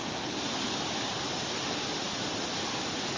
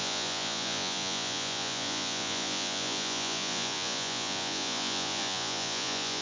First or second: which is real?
first